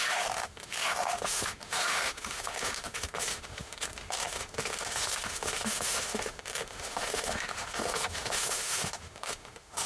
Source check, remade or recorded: remade